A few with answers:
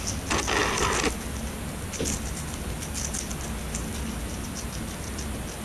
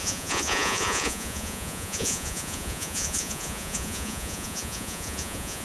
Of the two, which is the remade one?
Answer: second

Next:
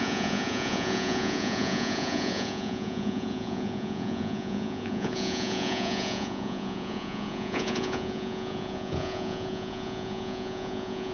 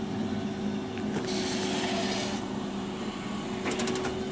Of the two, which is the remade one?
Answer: first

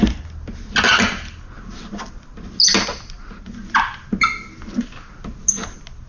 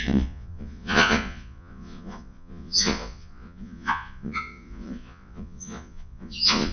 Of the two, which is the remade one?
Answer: second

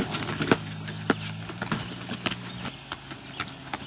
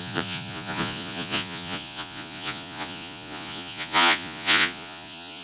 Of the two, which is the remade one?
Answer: second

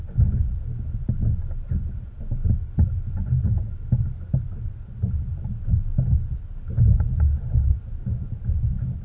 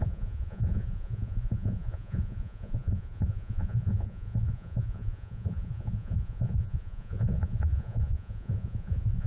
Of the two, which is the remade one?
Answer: second